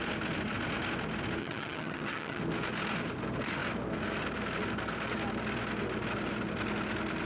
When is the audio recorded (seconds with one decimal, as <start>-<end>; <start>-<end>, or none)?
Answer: 0.0-1.4; 2.4-7.2